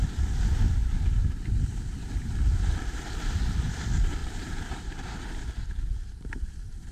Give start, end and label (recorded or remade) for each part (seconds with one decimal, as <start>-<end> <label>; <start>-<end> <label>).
0.0-0.8 recorded; 0.8-1.4 remade; 1.4-4.2 recorded; 4.2-6.5 remade; 6.5-6.9 recorded